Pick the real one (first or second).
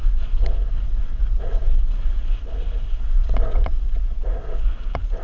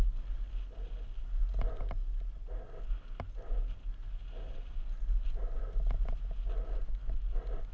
second